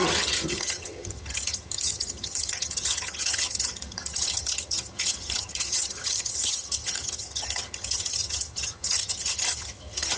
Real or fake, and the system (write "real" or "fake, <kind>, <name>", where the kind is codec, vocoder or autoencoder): fake, vocoder, HiFi-GAN